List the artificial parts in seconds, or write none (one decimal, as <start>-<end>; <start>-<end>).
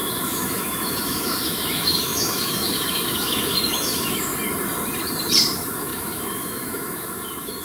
0.0-4.3; 5.4-7.6